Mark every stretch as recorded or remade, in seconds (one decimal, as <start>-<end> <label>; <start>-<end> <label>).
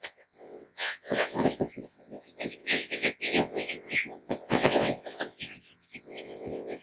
0.0-6.8 remade